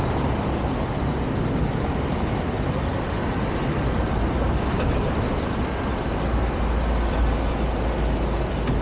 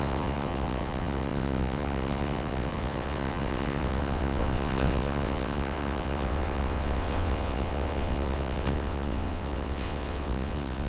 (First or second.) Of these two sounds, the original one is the first